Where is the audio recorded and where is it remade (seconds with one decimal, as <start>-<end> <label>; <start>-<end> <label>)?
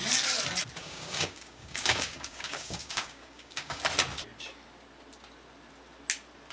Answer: 0.0-0.8 recorded; 0.8-3.8 remade; 3.8-6.5 recorded